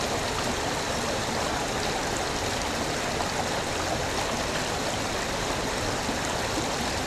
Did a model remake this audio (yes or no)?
no